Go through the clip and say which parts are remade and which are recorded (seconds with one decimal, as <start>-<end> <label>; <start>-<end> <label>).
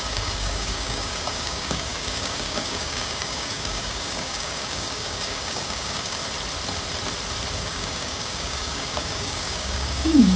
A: 0.0-6.2 remade; 6.2-7.6 recorded; 7.6-10.4 remade